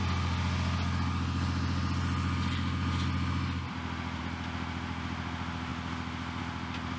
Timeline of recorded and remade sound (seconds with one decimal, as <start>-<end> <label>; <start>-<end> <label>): 0.0-7.0 recorded